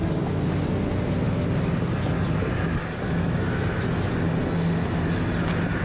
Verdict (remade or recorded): recorded